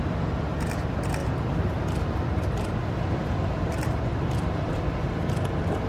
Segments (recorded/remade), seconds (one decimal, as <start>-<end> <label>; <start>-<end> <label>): 0.0-5.9 recorded